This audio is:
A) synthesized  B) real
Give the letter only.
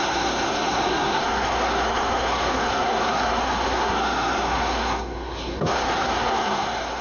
A